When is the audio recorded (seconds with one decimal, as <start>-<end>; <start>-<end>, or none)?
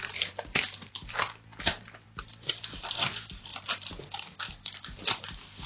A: 0.0-3.5; 4.5-5.7